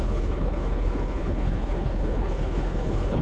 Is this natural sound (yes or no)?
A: no